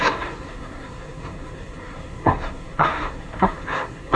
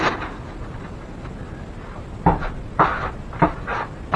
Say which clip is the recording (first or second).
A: second